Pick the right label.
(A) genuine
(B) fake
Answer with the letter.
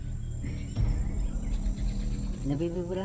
A